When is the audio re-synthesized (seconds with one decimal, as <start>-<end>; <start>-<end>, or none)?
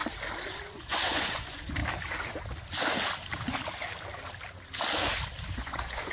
0.5-1.8; 5.5-6.1